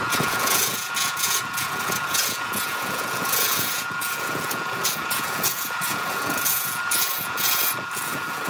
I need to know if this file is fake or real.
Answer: fake